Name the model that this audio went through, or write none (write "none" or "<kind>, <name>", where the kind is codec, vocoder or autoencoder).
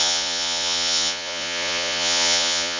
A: vocoder, Vocos